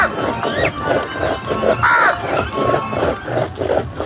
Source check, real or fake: real